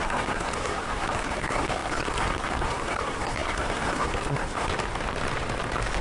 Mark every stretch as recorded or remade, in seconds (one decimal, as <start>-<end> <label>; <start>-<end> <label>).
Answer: 0.0-4.7 remade; 4.7-6.0 recorded